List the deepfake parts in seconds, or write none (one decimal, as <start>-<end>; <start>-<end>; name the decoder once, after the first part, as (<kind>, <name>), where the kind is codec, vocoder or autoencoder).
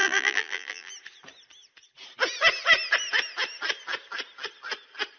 0.0-0.9 (vocoder, BigVGAN v2)